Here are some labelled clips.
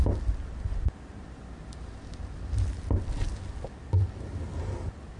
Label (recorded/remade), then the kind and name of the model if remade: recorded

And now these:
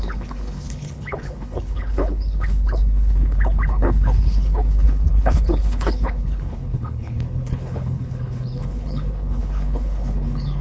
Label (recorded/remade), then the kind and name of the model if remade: remade, codec, HILCodec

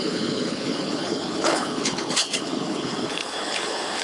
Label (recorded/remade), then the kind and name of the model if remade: remade, codec, HILCodec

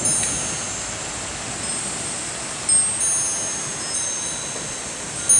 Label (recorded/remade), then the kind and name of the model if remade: recorded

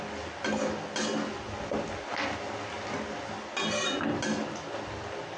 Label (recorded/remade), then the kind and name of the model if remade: recorded